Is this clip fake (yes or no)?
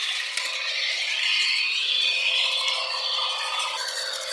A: yes